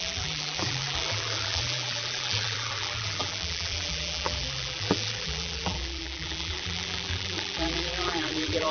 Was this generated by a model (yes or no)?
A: yes